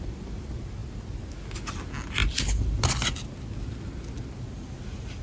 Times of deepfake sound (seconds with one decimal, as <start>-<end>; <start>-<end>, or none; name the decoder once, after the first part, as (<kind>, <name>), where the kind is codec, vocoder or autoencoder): none